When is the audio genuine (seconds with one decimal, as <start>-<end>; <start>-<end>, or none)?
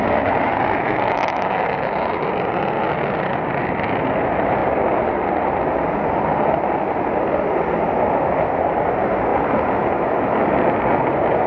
0.0-11.5